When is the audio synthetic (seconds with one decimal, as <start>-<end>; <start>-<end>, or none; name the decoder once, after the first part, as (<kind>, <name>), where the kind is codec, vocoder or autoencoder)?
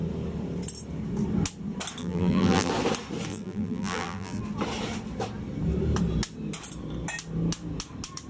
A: 2.0-2.7 (vocoder, BigVGAN v2); 3.3-4.4